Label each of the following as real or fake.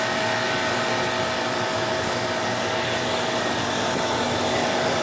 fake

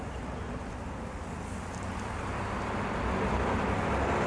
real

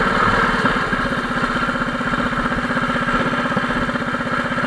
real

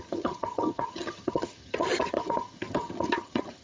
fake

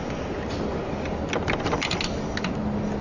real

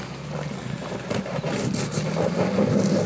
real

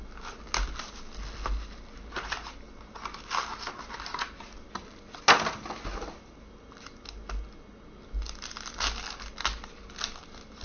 real